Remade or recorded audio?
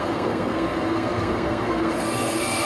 remade